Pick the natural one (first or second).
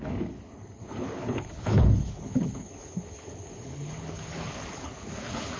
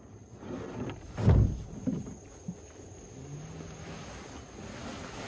second